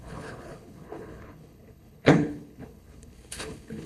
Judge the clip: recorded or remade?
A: remade